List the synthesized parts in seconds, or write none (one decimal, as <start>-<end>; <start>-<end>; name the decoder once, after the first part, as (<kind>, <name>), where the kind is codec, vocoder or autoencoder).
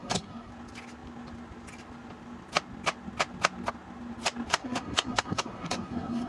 0.0-0.5 (codec, SNAC); 4.6-6.3